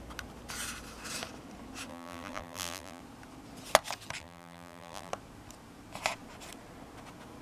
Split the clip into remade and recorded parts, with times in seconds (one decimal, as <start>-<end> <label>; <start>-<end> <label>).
0.0-1.9 recorded; 1.9-3.0 remade; 3.0-4.2 recorded; 4.2-5.1 remade; 5.1-7.4 recorded